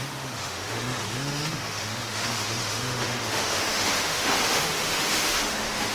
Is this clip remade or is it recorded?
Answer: remade